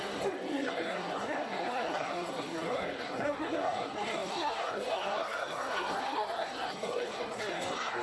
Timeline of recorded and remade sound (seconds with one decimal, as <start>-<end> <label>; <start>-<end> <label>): 0.0-8.0 remade

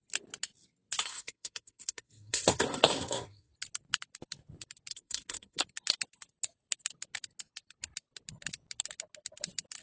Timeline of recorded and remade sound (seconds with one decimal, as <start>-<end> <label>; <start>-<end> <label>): 0.0-1.0 recorded; 1.0-3.5 remade; 3.5-4.9 recorded; 4.9-5.6 remade; 5.6-9.8 recorded

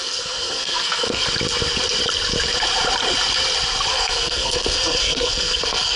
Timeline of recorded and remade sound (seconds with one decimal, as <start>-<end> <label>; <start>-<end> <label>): 0.0-1.2 remade; 1.2-3.9 recorded; 3.9-6.0 remade

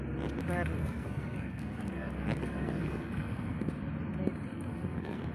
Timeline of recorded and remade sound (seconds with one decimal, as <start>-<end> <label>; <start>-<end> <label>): 0.0-0.8 recorded; 0.8-3.7 remade; 3.7-4.5 recorded; 4.5-5.3 remade

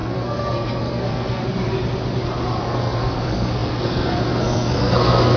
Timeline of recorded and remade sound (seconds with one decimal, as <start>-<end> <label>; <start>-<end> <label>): 0.0-1.4 remade; 1.4-2.6 recorded; 2.6-5.4 remade

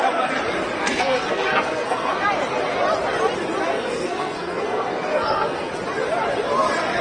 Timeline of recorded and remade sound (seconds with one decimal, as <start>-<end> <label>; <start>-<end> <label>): 0.0-0.8 recorded; 0.8-2.3 remade; 2.3-3.7 recorded; 3.7-5.7 remade; 5.7-7.0 recorded

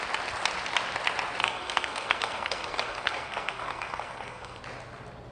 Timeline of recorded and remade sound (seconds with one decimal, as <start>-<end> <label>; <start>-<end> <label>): 0.0-1.4 recorded; 1.4-4.6 remade; 4.6-5.3 recorded

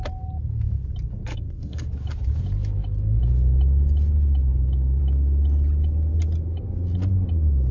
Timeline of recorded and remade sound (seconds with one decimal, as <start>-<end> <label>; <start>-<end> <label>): 0.0-1.3 recorded; 1.3-1.8 remade; 1.8-7.7 recorded